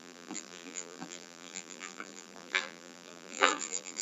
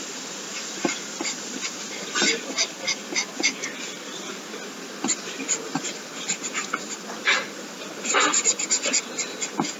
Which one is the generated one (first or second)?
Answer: first